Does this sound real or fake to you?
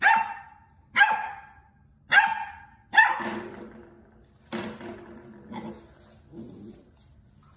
real